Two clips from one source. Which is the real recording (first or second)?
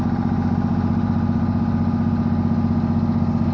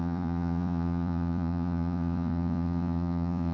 first